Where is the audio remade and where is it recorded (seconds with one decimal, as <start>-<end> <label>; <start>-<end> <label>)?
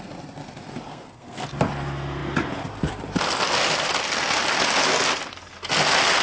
0.0-0.9 recorded; 0.9-1.5 remade; 1.5-6.2 recorded